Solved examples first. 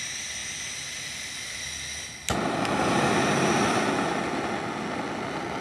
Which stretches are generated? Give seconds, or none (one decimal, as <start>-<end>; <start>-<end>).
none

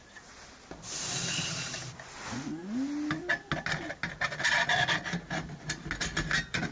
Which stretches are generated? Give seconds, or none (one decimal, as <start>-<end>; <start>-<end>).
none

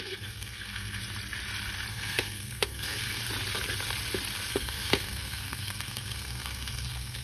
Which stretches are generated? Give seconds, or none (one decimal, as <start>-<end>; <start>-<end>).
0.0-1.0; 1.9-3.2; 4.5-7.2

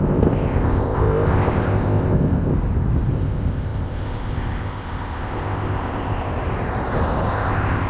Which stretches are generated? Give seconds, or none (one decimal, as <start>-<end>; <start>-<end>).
0.0-2.5; 3.1-6.3; 7.3-7.9